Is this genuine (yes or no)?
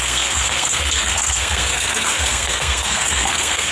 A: no